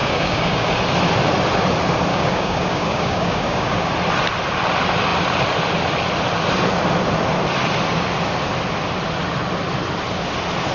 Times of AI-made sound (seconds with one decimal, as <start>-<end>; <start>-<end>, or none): 0.0-0.7; 2.1-3.9